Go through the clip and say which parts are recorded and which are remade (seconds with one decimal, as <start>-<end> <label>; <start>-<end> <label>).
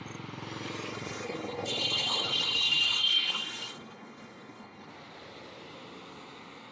0.0-0.9 recorded; 0.9-4.9 remade; 4.9-6.7 recorded